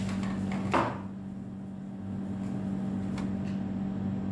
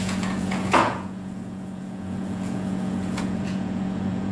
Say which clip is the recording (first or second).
first